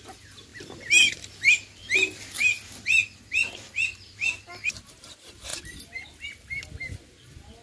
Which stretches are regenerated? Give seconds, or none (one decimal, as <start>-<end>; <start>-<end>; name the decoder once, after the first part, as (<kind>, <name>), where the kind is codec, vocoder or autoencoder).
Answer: none

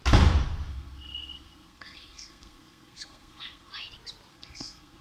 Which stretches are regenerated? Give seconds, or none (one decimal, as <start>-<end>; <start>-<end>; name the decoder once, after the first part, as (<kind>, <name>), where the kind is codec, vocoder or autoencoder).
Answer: 0.7-3.7 (codec, SNAC); 4.3-5.0